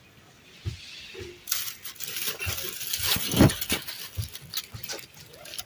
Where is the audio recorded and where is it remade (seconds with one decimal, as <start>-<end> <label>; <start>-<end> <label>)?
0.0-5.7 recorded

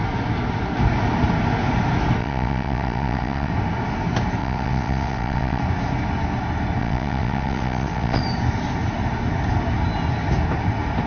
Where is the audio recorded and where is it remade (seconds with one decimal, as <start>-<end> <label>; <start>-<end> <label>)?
0.0-2.2 recorded; 2.2-3.5 remade; 3.5-4.4 recorded; 4.4-5.6 remade; 5.6-6.8 recorded; 6.8-8.2 remade; 8.2-11.1 recorded

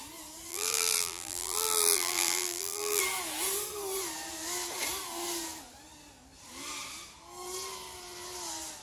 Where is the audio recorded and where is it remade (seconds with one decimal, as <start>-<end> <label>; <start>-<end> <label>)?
0.0-0.5 recorded; 0.5-3.0 remade; 3.0-8.8 recorded

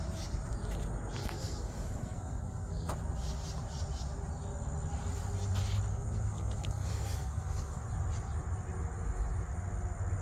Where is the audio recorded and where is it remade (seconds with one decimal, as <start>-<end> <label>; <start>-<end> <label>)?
0.0-1.2 recorded; 1.2-2.9 remade; 2.9-5.9 recorded; 5.9-7.8 remade; 7.8-10.2 recorded

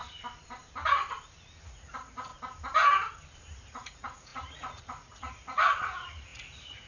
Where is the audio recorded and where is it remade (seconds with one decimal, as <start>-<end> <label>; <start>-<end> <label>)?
0.0-1.6 recorded; 1.6-2.3 remade; 2.3-3.6 recorded; 3.6-6.9 remade

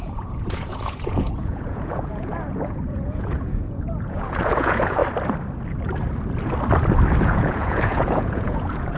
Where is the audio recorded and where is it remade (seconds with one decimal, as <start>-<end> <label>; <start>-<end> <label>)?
0.0-5.0 remade; 5.0-7.2 recorded; 7.2-9.0 remade